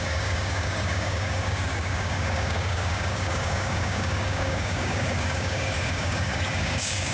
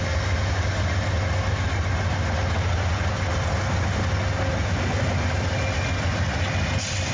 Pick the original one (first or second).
second